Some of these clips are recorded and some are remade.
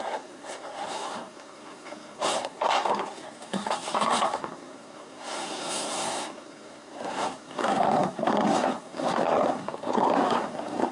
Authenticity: remade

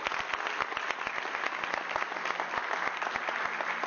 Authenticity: recorded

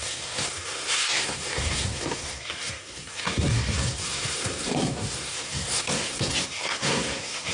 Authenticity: remade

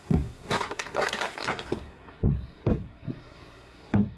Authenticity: remade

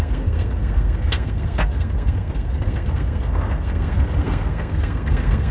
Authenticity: remade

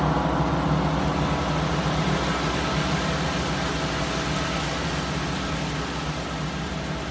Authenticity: recorded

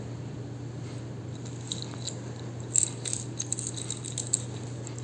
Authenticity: recorded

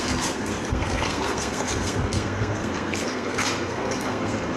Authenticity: remade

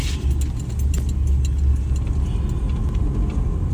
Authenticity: recorded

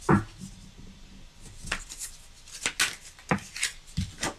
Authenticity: recorded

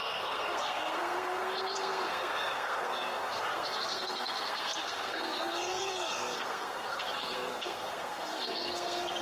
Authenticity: remade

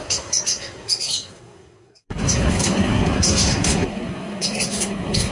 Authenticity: remade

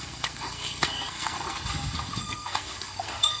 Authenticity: remade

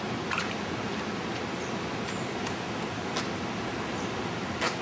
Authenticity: recorded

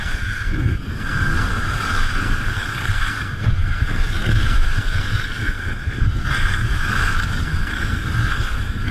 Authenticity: remade